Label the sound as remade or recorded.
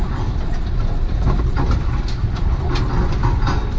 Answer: remade